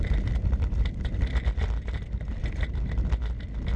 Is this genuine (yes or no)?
yes